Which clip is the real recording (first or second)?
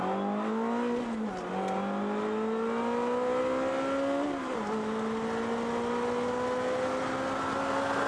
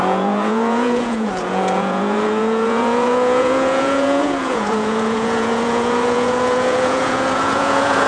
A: first